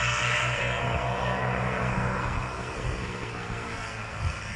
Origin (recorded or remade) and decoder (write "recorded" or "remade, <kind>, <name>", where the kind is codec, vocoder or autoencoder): remade, codec, SNAC